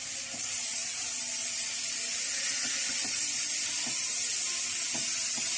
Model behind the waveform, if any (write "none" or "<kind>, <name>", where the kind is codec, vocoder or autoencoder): none